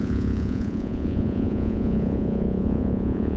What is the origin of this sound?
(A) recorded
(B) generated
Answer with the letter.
B